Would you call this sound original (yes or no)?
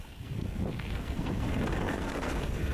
no